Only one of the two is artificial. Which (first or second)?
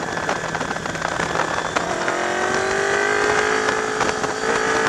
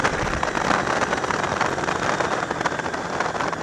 second